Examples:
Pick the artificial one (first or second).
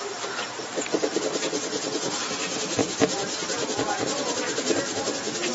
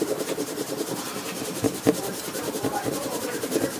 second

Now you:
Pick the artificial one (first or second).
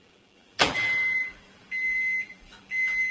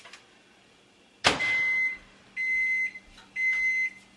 first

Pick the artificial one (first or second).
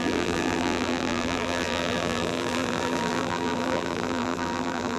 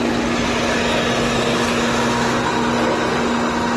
first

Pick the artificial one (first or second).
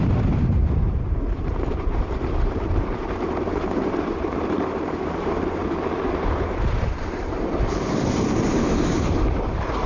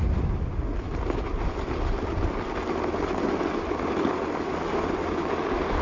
first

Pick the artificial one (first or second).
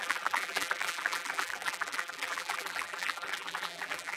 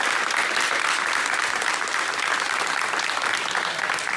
first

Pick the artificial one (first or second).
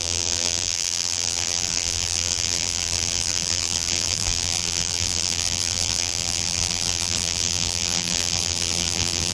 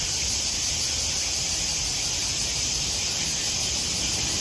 first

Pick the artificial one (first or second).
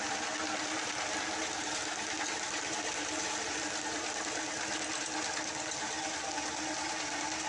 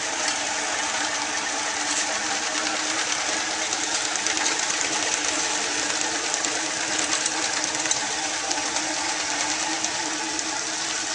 second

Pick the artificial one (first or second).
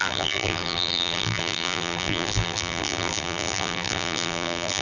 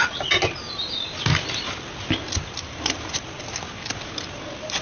first